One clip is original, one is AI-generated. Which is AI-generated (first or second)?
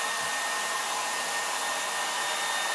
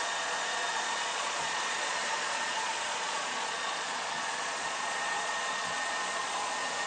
second